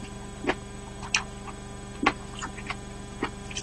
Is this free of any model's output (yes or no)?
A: yes